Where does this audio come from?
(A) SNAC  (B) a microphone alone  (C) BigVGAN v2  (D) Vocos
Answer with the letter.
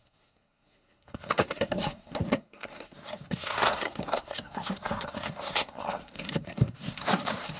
A